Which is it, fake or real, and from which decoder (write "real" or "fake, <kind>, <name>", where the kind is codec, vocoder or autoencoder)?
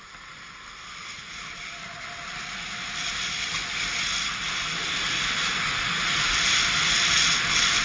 real